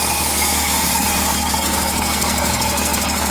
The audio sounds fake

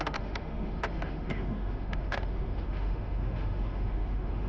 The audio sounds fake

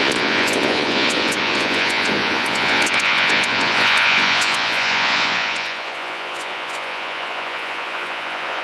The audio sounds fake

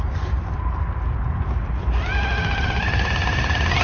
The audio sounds real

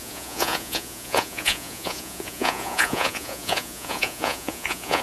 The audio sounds fake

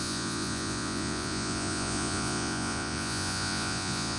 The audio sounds fake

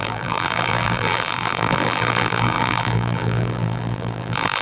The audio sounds fake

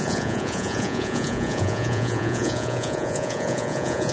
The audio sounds fake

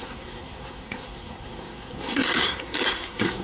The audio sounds fake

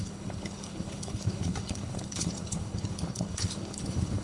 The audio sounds fake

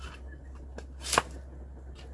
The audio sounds real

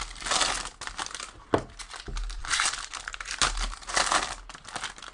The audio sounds real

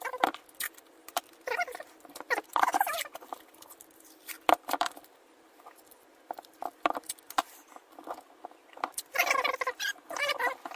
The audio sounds fake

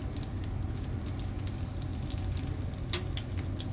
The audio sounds real